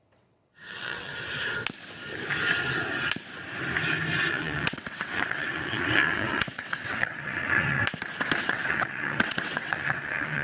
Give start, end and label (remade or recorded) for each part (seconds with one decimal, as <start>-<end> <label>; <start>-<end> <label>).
0.0-1.1 remade; 1.1-4.3 recorded; 4.3-7.8 remade; 7.8-8.4 recorded; 8.4-10.4 remade